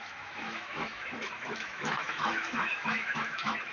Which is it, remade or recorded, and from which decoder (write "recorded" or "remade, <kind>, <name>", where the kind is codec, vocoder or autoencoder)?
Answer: remade, autoencoder, DAC-VAE